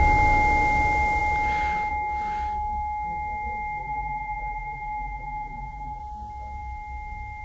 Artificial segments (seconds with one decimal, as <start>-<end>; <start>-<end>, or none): 3.8-6.0